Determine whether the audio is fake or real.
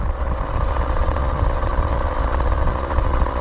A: fake